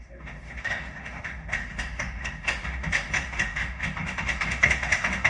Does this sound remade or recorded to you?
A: remade